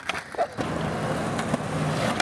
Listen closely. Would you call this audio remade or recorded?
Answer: recorded